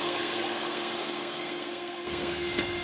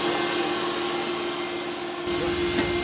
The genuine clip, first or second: second